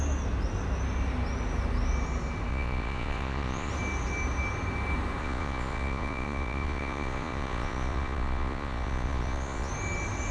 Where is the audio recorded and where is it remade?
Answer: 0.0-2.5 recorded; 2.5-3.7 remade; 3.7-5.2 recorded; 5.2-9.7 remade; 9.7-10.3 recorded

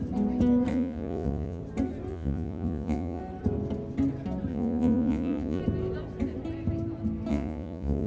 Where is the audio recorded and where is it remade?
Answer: 0.0-0.7 recorded; 0.7-1.6 remade; 1.6-2.1 recorded; 2.1-3.2 remade; 3.2-4.5 recorded; 4.5-5.6 remade; 5.6-7.3 recorded; 7.3-8.1 remade

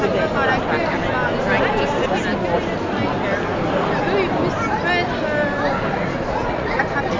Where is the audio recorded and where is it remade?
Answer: 0.0-6.3 recorded; 6.3-6.8 remade; 6.8-7.2 recorded

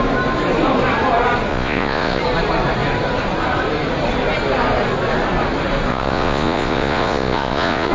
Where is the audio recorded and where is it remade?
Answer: 0.0-1.5 recorded; 1.5-2.2 remade; 2.2-5.9 recorded; 5.9-7.9 remade

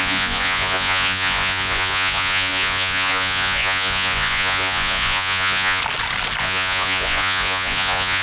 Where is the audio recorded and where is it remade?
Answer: 0.0-5.8 remade; 5.8-6.4 recorded; 6.4-8.2 remade